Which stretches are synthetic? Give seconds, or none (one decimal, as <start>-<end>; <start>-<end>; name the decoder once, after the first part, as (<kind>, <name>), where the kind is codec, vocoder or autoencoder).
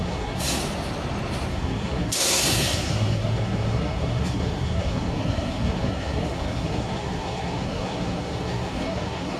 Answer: 0.0-0.6 (codec, SNAC); 1.5-9.4